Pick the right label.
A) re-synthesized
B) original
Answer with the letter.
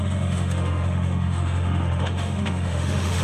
A